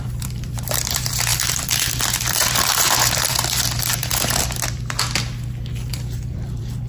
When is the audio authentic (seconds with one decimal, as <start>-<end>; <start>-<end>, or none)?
4.0-5.9